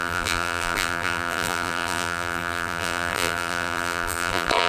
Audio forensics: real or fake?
fake